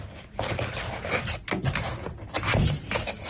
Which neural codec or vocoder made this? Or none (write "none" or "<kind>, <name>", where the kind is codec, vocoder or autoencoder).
none